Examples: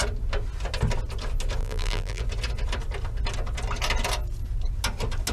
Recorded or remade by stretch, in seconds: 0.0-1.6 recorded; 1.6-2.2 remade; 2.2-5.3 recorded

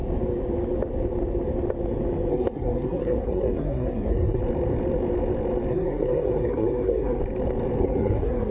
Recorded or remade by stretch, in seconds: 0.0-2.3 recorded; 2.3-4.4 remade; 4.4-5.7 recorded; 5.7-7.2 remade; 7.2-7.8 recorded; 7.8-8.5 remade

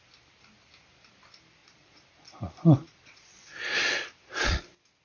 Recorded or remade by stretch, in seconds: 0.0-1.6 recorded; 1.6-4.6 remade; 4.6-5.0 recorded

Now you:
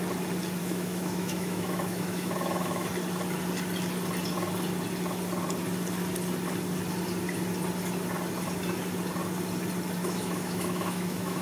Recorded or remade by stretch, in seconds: 0.0-0.6 recorded; 0.6-2.9 remade; 2.9-10.0 recorded; 10.0-11.4 remade